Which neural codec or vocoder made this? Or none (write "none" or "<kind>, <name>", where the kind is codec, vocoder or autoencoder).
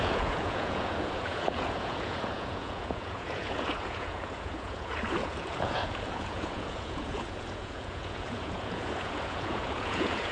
vocoder, Vocos